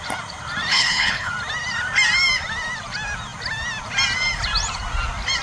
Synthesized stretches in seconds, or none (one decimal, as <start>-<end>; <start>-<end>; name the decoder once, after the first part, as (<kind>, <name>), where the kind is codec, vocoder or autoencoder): 0.7-1.3 (codec, HILCodec)